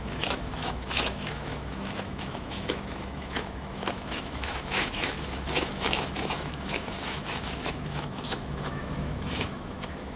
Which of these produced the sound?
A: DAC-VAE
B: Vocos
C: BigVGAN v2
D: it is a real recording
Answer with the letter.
A